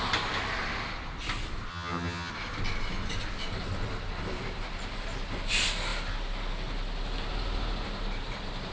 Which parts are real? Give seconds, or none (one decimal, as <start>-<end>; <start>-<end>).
0.0-1.7; 2.3-8.7